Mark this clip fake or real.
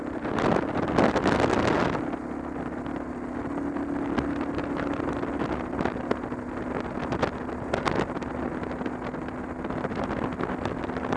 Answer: real